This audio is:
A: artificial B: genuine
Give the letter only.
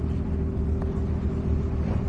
B